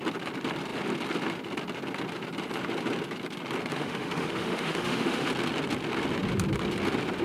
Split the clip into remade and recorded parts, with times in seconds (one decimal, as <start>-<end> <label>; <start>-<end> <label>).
0.0-3.7 recorded; 3.7-5.3 remade; 5.3-7.2 recorded